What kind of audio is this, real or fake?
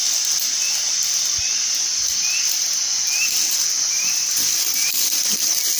real